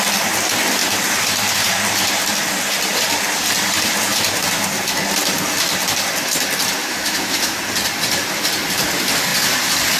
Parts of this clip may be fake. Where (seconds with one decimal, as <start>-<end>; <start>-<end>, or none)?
6.8-7.6